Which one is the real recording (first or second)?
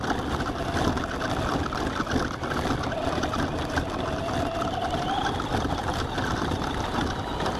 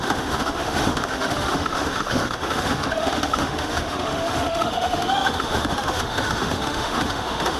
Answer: first